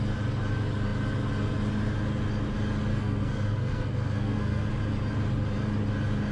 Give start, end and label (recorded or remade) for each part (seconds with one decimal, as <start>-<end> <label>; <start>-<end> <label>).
0.0-2.9 recorded; 2.9-4.7 remade; 4.7-6.3 recorded